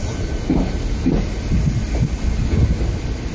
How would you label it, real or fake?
real